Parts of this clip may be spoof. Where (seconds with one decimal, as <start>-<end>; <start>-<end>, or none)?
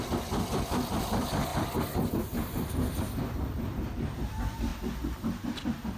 0.0-1.5; 2.1-4.7